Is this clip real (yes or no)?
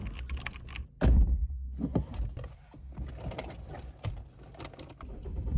yes